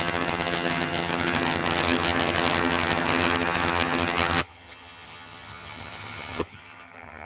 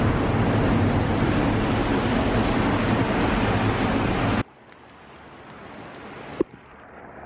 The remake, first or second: first